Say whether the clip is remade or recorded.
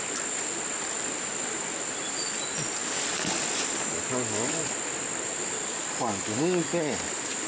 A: recorded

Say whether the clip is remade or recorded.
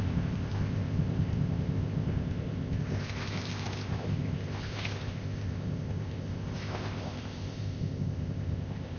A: remade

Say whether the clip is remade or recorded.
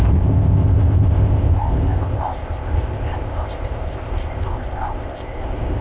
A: remade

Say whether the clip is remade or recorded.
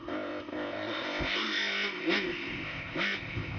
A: remade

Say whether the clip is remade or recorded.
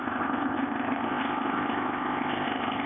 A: remade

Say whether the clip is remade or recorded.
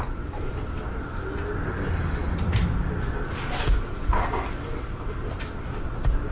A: recorded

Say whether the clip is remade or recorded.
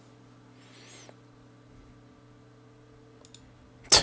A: recorded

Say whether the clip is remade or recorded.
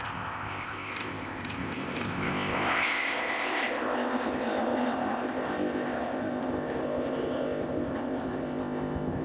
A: remade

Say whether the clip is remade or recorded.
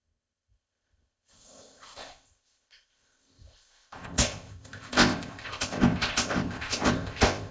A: remade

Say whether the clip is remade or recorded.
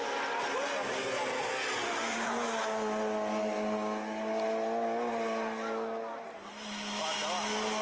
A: recorded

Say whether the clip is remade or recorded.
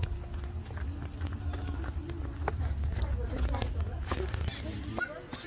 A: recorded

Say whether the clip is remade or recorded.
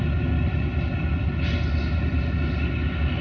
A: recorded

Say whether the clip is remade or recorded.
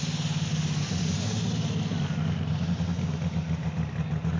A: recorded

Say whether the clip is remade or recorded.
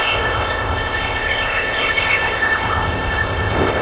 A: remade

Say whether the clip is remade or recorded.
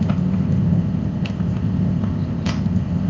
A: remade